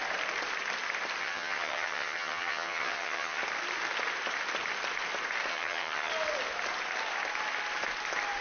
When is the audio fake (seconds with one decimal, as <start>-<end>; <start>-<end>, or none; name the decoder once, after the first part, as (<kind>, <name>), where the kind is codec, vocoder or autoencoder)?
1.2-3.4 (vocoder, HiFi-GAN); 5.5-6.1